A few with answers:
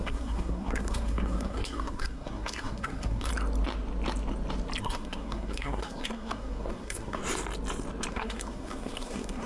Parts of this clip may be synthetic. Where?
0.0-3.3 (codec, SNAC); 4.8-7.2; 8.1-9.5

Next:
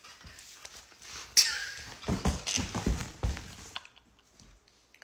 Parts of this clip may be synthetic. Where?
none